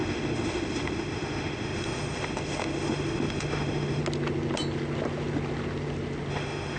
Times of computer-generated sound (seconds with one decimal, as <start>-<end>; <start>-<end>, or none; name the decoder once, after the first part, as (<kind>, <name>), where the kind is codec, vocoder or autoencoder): 0.0-4.0 (autoencoder, DAC-VAE); 6.3-6.8